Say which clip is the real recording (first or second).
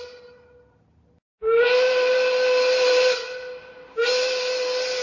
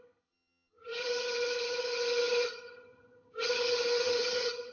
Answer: first